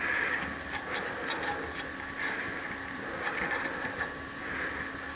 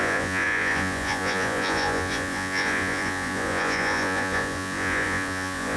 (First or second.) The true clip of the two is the first